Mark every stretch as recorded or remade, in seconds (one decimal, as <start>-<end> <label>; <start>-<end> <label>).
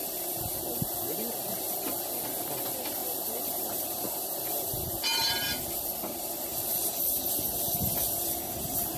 0.0-1.3 remade; 1.3-3.0 recorded; 3.0-7.0 remade; 7.0-9.0 recorded